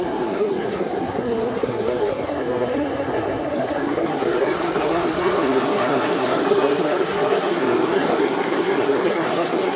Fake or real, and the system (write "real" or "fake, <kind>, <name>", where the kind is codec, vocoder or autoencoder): fake, codec, SNAC